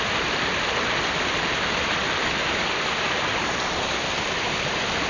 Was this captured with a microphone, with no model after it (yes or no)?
yes